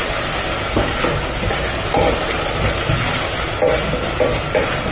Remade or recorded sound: recorded